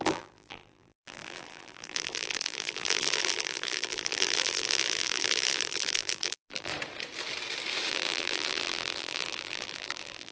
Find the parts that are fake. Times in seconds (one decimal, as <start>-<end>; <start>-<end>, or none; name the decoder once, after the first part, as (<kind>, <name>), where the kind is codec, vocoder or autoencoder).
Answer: 0.0-6.7 (vocoder, BigVGAN v2); 7.9-10.3